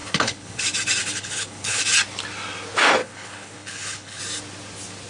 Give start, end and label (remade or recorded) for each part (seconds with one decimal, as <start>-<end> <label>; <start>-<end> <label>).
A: 0.0-0.6 remade; 0.6-1.0 recorded; 1.0-1.8 remade; 1.8-3.0 recorded; 3.0-4.2 remade; 4.2-5.1 recorded